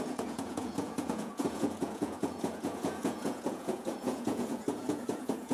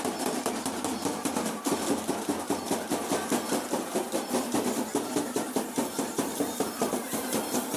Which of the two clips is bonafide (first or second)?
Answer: second